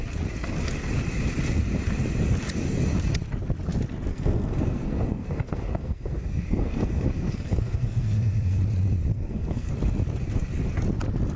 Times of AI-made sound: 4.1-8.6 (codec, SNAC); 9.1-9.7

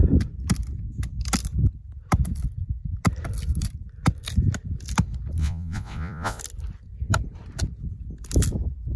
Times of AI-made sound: 5.4-6.4 (vocoder, Vocos)